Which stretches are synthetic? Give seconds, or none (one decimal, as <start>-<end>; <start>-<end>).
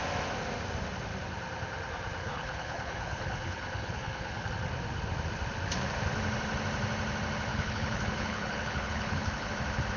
2.2-4.5; 7.5-9.5